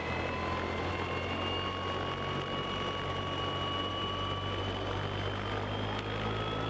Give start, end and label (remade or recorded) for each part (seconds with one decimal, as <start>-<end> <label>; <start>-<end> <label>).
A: 0.0-3.9 recorded; 3.9-4.6 remade; 4.6-6.7 recorded

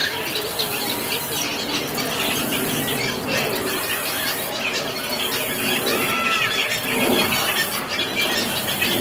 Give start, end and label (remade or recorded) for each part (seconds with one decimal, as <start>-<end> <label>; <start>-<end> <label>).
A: 0.0-0.8 remade; 0.8-9.0 recorded

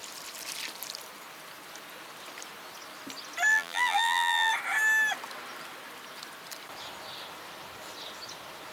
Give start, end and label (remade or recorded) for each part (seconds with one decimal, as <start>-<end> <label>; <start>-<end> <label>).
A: 0.0-3.5 recorded; 3.5-4.5 remade; 4.5-8.7 recorded

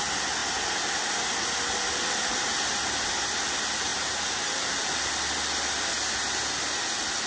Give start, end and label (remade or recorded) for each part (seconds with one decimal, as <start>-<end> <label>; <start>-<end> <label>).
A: 0.0-3.9 recorded; 3.9-5.1 remade; 5.1-7.3 recorded

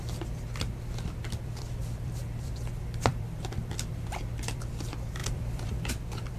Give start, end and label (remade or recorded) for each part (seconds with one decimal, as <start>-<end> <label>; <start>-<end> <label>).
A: 0.0-6.4 remade

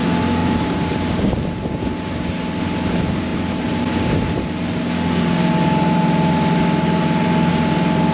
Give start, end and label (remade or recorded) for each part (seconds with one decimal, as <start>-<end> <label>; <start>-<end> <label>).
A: 0.0-0.4 recorded; 0.4-1.3 remade; 1.3-8.1 recorded

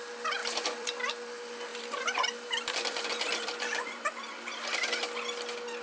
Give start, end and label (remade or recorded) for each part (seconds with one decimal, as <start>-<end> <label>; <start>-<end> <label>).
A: 0.0-0.4 recorded; 0.4-1.1 remade; 1.1-1.7 recorded; 1.7-4.5 remade; 4.5-5.8 recorded

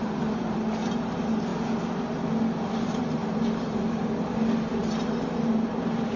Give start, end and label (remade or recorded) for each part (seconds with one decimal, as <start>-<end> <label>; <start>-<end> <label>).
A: 0.0-1.5 remade; 1.5-2.8 recorded; 2.8-6.2 remade